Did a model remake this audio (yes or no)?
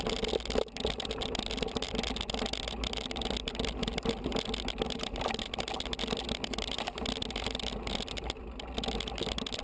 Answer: no